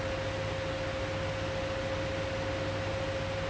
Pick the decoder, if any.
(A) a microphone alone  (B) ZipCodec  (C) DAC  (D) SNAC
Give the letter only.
A